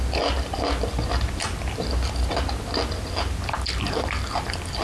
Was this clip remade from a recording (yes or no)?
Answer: no